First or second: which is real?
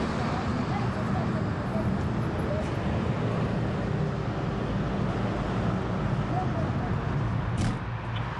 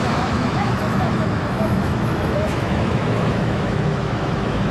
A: first